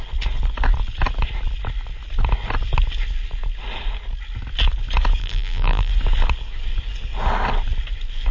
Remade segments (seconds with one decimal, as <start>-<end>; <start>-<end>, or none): 5.2-5.9